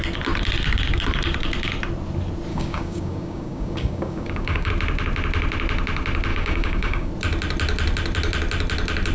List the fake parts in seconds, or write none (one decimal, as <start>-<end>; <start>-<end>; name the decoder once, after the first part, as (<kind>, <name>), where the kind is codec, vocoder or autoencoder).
2.5-4.7 (codec, DAC); 6.3-7.1